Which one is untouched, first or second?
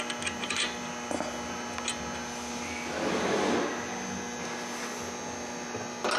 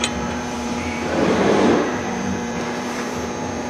first